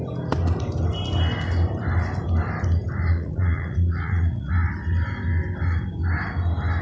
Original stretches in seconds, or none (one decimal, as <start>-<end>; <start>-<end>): 0.0-3.1; 4.5-6.8

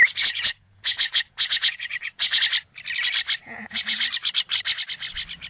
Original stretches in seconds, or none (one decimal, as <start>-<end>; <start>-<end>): 2.4-3.4; 4.0-5.5